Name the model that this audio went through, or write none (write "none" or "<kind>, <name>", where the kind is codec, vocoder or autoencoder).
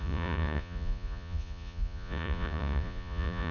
vocoder, Vocos